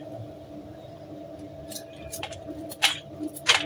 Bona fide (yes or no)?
no